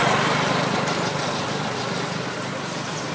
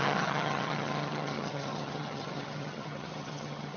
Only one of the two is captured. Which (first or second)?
first